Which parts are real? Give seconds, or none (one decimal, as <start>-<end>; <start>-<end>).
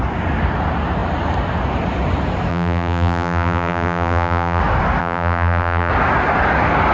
0.0-2.5; 4.6-5.0; 5.9-6.9